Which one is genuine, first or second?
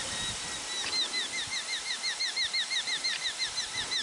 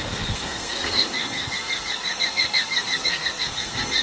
first